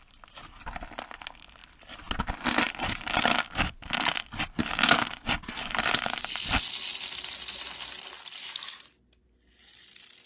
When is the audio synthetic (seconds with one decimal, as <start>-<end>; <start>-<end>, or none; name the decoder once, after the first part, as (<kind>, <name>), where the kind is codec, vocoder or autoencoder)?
none